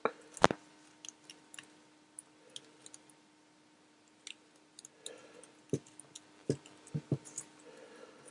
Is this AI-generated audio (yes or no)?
no